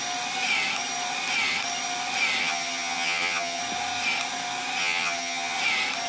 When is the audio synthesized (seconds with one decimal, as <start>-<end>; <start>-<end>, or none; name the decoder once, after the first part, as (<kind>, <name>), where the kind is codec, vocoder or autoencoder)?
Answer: 2.4-3.6 (vocoder, HiFi-GAN); 4.8-5.6